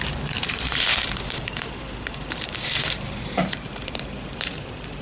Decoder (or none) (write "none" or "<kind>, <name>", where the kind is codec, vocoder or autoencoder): vocoder, BigVGAN v2